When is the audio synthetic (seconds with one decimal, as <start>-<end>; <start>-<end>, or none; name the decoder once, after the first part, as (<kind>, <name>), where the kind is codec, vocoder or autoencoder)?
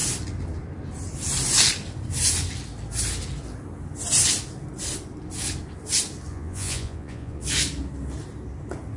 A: 6.3-7.4 (vocoder, Vocos)